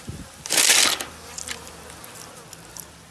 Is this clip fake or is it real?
real